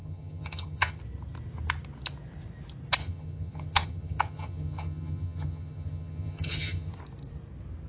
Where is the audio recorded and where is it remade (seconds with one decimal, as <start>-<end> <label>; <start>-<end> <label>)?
0.0-1.0 remade; 1.0-3.0 recorded; 3.0-6.9 remade; 6.9-7.9 recorded